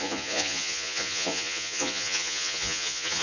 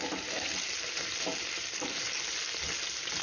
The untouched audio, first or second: second